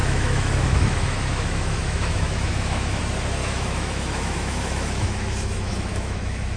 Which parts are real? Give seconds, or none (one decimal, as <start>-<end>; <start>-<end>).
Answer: 3.0-3.4